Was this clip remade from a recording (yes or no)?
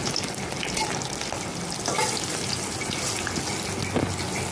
no